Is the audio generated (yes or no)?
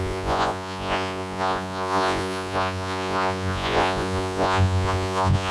yes